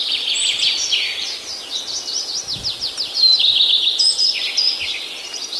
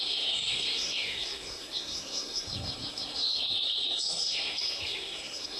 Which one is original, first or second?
first